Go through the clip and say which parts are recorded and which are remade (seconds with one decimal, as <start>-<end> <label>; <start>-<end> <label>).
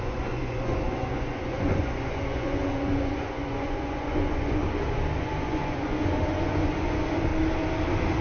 0.0-4.6 remade; 4.6-5.2 recorded; 5.2-7.3 remade; 7.3-8.2 recorded